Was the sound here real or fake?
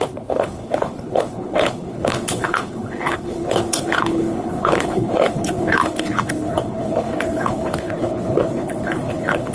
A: fake